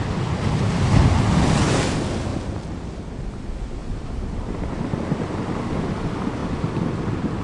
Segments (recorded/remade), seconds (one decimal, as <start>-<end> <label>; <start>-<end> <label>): 0.0-7.4 recorded